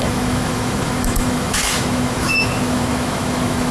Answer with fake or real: fake